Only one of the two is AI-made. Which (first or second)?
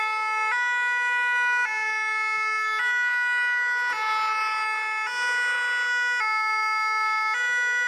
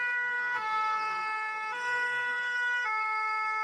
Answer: second